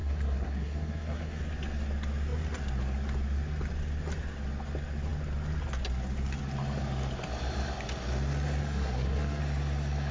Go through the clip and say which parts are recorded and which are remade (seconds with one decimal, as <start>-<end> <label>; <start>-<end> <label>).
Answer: 0.0-1.4 remade; 1.4-8.6 recorded; 8.6-9.4 remade; 9.4-10.1 recorded